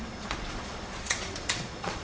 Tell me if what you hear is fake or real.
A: fake